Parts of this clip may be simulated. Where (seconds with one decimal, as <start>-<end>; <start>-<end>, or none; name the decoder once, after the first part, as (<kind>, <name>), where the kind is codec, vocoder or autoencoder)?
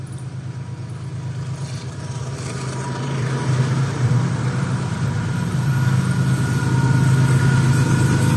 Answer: 1.6-5.7 (vocoder, BigVGAN v2)